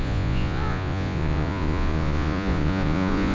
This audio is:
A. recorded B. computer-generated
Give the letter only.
B